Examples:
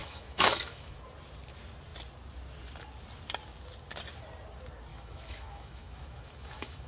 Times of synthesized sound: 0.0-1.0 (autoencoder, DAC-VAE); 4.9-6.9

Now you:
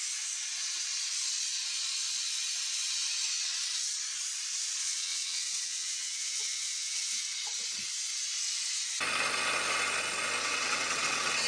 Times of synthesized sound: 4.8-7.2 (vocoder, WaveNeXt); 10.4-11.5

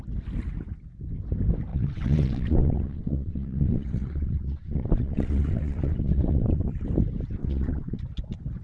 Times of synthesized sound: 1.7-6.7 (vocoder, WaveNeXt); 7.4-8.0

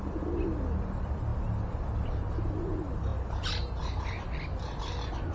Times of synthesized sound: none

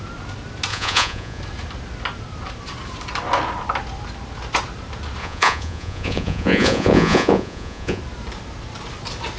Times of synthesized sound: 0.7-1.4 (vocoder, Vocos); 5.2-8.0

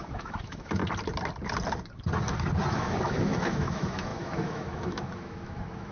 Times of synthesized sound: 0.0-0.8 (autoencoder, DAC-VAE); 2.7-5.9